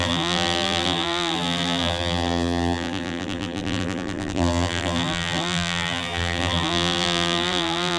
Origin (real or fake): fake